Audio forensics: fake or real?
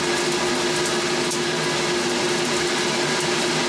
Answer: real